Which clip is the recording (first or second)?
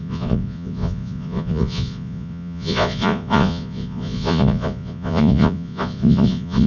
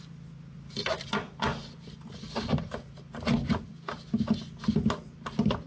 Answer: second